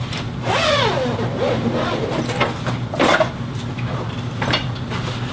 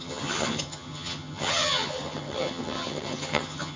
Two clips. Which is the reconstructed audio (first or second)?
second